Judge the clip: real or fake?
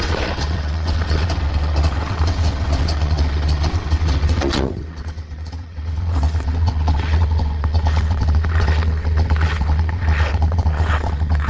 fake